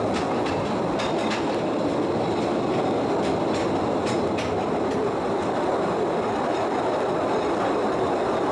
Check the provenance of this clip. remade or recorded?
recorded